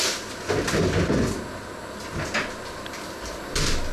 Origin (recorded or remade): recorded